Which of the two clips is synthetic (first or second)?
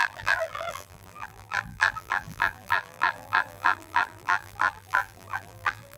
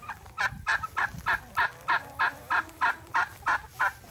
first